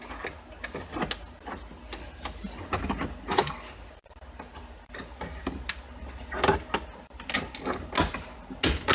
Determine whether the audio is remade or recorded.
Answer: recorded